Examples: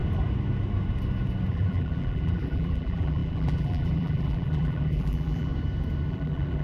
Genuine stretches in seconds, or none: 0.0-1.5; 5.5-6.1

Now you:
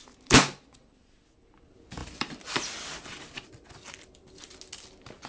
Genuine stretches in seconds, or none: 0.0-2.0; 4.5-5.3

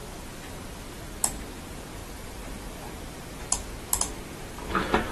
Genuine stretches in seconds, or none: 0.0-2.0; 3.0-5.1